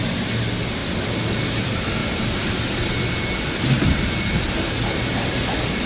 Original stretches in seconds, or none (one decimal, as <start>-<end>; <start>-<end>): 0.0-2.0; 4.4-5.9